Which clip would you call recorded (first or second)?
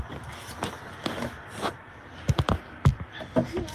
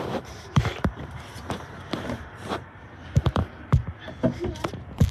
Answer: first